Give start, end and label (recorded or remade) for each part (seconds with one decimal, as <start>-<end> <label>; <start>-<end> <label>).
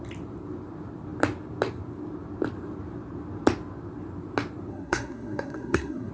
0.0-4.7 recorded; 4.7-6.1 remade